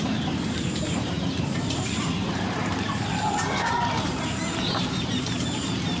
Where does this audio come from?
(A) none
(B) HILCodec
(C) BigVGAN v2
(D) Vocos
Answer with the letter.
C